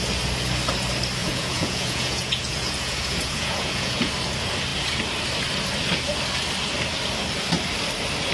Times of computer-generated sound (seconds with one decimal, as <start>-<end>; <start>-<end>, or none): 1.2-4.1